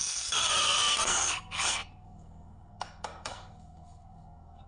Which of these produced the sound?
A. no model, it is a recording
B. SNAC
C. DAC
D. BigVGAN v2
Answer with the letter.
B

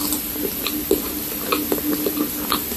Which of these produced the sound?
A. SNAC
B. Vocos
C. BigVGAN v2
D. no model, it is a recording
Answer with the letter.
D